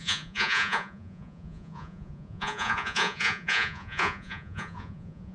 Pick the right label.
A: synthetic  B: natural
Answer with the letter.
A